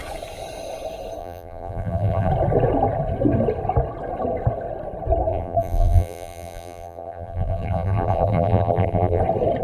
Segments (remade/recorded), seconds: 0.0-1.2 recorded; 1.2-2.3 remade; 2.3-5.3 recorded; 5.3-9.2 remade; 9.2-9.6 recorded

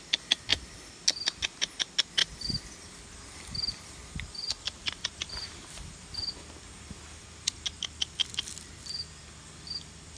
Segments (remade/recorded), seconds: 0.0-0.5 recorded; 0.5-1.0 remade; 1.0-2.2 recorded; 2.2-6.4 remade; 6.4-10.2 recorded

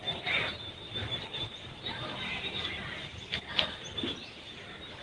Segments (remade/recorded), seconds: 0.0-1.0 recorded; 1.0-3.5 remade; 3.5-4.2 recorded; 4.2-5.0 remade

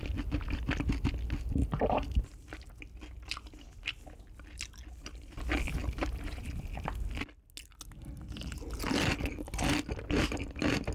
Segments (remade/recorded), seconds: 0.0-1.6 recorded; 1.6-2.8 remade; 2.8-5.8 recorded; 5.8-6.4 remade; 6.4-10.9 recorded

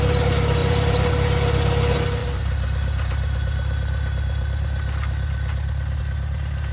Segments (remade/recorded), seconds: 0.0-0.6 recorded; 0.6-1.1 remade; 1.1-2.2 recorded; 2.2-6.0 remade; 6.0-6.7 recorded

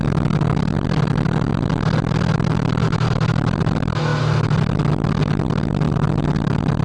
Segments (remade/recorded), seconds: 0.0-6.8 recorded